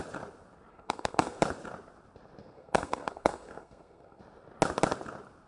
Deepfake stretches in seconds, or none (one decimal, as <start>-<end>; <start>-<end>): 0.7-1.4; 2.4-4.2